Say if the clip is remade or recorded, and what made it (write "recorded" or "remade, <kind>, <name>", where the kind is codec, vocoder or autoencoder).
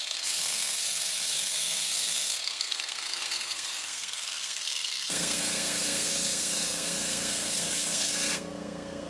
remade, codec, SNAC